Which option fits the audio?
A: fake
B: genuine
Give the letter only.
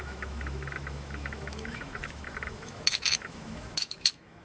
A